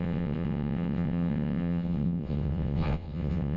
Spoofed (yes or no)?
yes